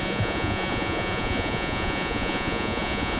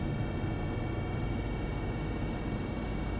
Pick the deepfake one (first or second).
first